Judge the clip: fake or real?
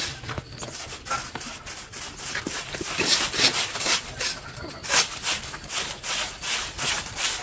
real